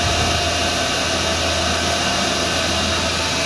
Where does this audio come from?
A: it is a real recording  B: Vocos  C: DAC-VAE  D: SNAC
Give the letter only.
A